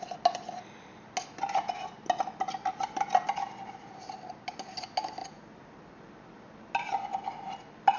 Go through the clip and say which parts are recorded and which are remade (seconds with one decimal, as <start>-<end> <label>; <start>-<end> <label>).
0.0-8.0 recorded